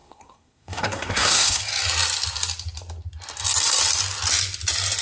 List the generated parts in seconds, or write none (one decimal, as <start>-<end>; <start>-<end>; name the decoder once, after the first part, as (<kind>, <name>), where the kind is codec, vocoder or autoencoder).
0.0-1.6 (codec, SNAC)

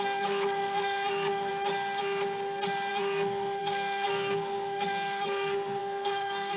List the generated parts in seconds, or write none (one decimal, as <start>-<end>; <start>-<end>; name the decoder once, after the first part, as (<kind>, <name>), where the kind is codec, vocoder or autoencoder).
0.0-1.5 (codec, SNAC); 2.9-6.6

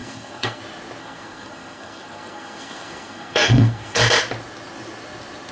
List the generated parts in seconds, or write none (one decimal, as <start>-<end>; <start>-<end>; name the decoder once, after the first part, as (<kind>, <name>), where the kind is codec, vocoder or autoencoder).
0.0-0.6 (codec, SNAC); 1.0-4.0

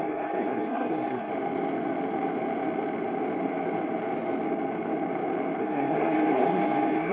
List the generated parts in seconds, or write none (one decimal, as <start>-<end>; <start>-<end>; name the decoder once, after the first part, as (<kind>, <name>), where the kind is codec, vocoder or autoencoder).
0.0-1.3 (codec, SNAC); 5.6-7.1